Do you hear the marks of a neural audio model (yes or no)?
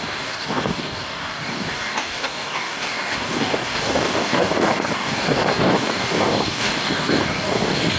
yes